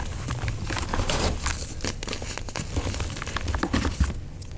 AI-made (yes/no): no